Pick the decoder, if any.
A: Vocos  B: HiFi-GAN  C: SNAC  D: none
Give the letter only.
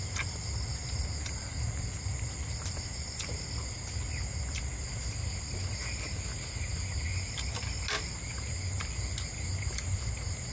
D